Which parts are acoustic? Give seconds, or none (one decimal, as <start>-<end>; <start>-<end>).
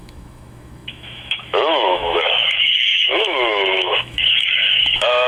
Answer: none